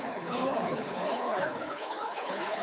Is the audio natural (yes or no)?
no